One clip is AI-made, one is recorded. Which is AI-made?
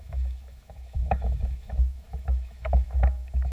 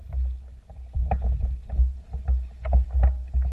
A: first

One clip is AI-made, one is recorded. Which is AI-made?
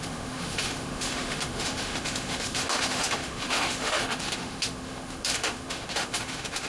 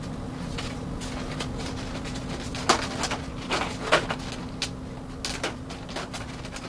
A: first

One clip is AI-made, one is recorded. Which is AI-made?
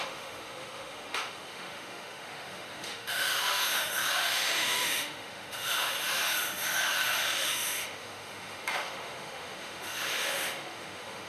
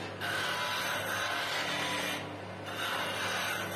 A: first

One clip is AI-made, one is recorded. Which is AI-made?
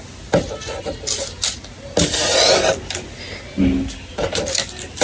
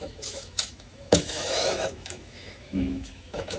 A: second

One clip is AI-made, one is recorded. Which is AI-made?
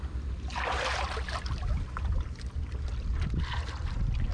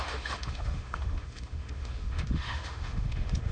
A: second